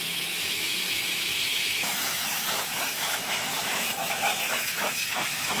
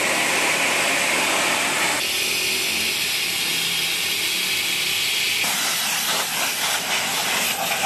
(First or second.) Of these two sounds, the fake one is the first